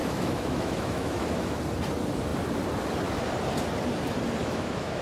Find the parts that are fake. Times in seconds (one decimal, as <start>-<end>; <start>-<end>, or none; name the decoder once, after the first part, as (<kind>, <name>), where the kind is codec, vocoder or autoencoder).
0.0-1.6 (autoencoder, DAC-VAE); 4.4-5.0